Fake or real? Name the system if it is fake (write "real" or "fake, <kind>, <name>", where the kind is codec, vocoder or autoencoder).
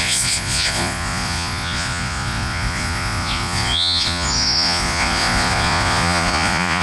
fake, vocoder, Vocos